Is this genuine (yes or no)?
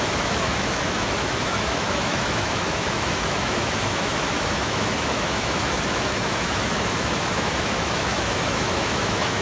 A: no